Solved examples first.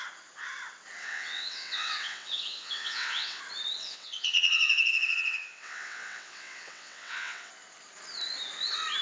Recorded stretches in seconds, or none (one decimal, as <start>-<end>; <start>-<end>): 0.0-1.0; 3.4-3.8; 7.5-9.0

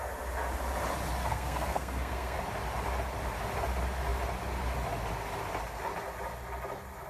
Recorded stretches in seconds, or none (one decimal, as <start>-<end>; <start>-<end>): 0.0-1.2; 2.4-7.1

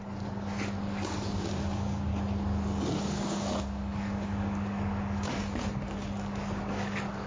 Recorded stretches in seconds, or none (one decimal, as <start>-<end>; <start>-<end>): 2.1-3.0